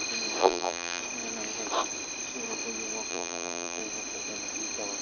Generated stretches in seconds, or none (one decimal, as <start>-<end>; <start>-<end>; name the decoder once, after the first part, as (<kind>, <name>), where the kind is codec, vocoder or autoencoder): 0.4-1.0 (vocoder, BigVGAN v2); 3.1-3.8